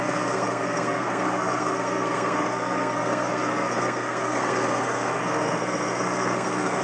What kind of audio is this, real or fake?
fake